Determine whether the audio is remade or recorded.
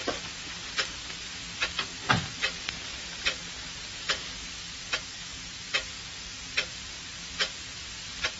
recorded